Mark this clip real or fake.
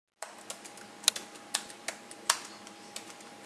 real